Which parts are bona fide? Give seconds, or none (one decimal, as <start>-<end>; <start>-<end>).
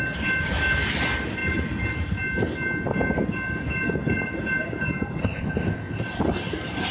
0.0-5.2; 6.0-6.9